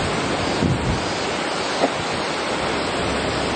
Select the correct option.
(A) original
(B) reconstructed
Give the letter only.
A